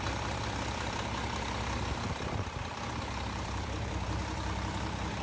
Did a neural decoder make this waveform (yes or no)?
yes